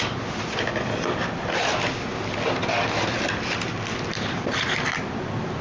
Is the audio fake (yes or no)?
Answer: no